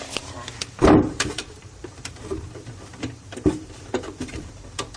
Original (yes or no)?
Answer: no